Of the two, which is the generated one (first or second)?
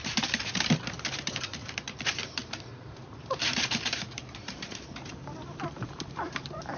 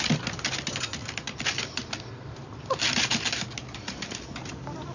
first